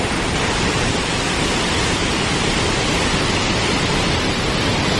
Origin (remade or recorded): recorded